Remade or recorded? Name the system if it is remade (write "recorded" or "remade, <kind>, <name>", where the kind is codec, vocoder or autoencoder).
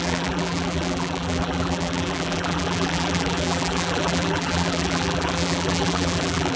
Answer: remade, vocoder, BigVGAN v2